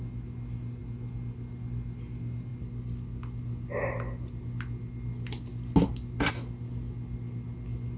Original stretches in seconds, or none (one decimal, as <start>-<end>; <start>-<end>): 0.0-8.0